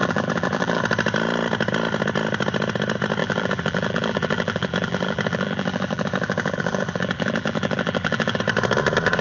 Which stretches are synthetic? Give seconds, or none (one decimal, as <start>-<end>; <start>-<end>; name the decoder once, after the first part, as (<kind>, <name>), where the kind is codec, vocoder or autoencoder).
0.0-0.8 (vocoder, BigVGAN v2); 3.2-8.4